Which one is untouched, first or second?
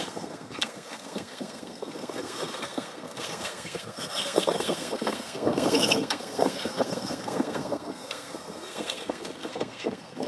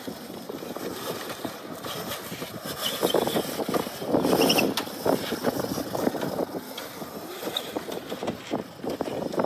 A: second